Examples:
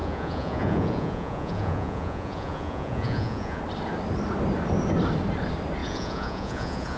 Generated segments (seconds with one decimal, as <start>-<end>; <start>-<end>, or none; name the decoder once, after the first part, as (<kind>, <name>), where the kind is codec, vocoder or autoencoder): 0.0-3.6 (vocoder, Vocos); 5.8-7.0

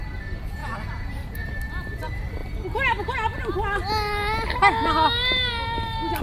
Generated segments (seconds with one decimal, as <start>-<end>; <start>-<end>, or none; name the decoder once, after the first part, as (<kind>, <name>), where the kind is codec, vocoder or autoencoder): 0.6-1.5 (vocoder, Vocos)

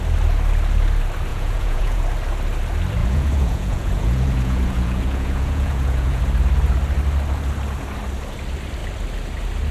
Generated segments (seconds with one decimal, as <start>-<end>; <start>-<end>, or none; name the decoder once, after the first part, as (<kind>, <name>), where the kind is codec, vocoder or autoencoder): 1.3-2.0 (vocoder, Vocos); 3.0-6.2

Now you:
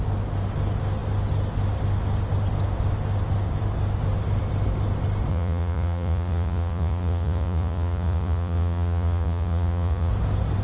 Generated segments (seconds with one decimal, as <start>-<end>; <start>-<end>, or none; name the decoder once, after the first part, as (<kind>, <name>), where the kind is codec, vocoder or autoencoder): 5.3-10.1 (vocoder, Vocos)

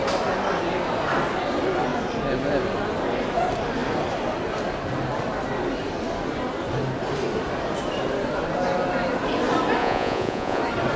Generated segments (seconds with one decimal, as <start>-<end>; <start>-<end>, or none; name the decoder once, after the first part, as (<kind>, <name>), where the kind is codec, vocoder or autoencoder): 9.8-10.6 (vocoder, Vocos)

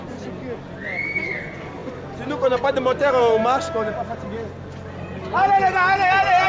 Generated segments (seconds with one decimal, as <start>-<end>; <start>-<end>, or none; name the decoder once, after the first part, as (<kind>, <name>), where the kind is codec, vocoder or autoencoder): none

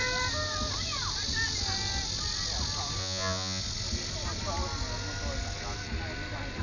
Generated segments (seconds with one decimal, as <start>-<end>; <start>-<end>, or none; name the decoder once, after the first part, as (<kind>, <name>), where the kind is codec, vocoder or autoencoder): 3.0-3.6 (vocoder, Vocos)